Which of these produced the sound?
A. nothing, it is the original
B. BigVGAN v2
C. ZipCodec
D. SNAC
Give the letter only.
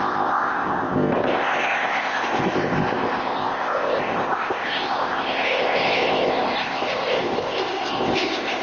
C